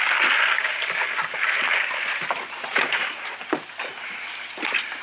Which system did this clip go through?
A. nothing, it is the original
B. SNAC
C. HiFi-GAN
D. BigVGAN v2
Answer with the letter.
A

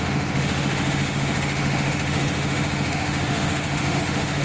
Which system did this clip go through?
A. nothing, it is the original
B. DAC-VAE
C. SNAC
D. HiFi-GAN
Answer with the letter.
B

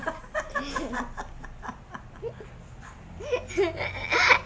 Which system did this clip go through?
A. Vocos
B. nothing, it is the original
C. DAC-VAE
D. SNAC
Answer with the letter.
B